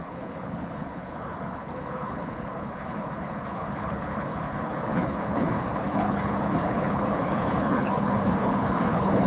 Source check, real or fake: fake